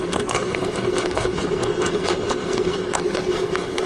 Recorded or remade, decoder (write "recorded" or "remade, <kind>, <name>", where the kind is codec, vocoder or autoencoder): remade, codec, SNAC